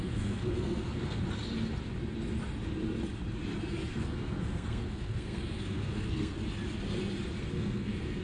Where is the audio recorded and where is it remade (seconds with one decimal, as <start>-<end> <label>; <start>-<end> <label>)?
0.0-1.2 remade; 1.2-3.9 recorded; 3.9-6.4 remade; 6.4-7.4 recorded; 7.4-8.2 remade